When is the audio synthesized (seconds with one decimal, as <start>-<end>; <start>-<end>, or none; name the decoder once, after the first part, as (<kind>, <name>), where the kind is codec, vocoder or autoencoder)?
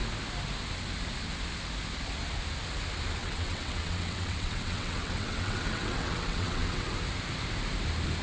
3.2-6.9 (vocoder, WaveNeXt)